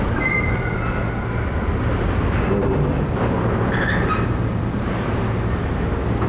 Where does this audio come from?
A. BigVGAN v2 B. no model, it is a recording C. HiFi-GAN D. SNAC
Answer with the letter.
B